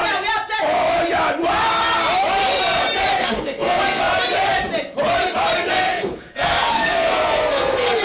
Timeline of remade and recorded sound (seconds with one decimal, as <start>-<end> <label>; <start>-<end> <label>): 0.0-3.2 recorded; 3.2-4.0 remade; 4.0-5.7 recorded; 5.7-8.0 remade